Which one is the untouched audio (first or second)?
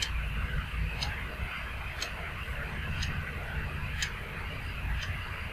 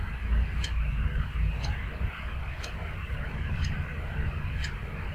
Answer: first